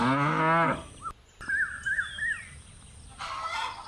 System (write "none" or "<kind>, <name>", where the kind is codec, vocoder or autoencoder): none